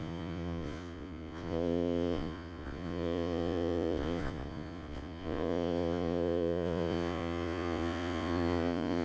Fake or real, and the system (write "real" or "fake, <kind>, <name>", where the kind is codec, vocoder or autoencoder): fake, vocoder, Vocos